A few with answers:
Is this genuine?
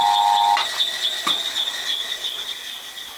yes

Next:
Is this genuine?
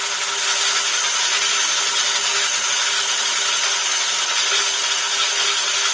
yes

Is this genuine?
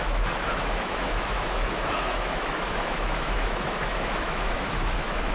no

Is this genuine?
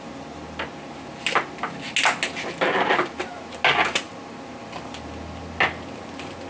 yes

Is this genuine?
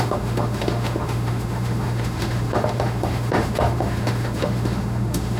no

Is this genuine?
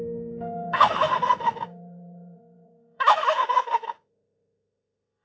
no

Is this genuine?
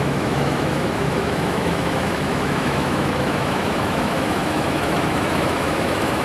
no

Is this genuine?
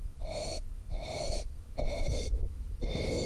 no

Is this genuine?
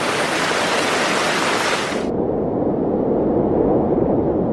yes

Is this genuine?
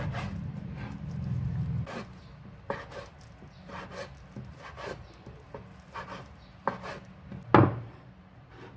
yes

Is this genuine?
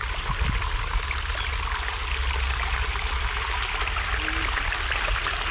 yes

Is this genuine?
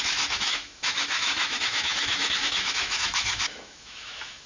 no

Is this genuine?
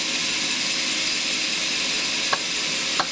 yes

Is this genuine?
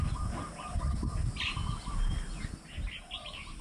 yes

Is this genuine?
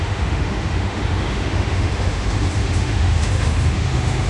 no